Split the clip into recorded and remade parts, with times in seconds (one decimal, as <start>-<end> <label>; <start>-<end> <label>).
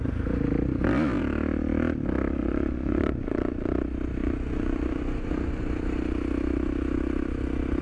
0.0-2.4 recorded; 2.4-3.7 remade; 3.7-4.2 recorded; 4.2-5.7 remade; 5.7-7.8 recorded